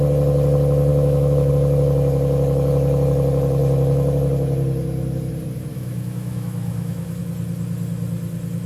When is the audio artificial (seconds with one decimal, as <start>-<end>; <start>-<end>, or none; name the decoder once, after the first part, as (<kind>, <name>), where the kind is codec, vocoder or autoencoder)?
0.9-1.5 (autoencoder, DAC-VAE); 5.7-7.2